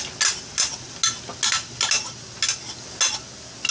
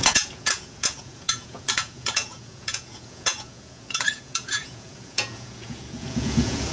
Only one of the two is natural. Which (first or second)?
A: first